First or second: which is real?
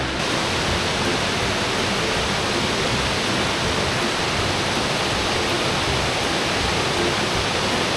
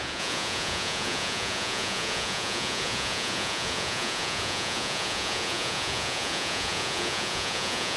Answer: first